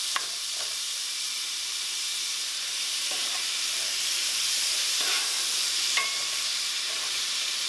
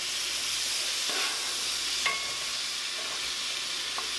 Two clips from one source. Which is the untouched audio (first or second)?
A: second